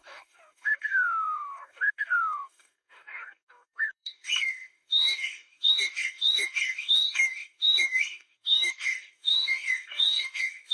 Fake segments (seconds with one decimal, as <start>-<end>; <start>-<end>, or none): 0.0-10.7